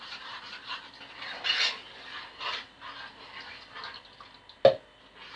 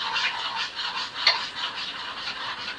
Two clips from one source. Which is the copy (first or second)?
second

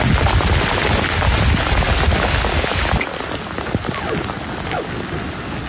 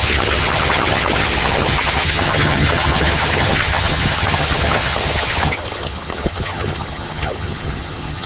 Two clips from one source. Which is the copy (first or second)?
second